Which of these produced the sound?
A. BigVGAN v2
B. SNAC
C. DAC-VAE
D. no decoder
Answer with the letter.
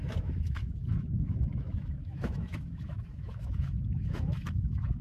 C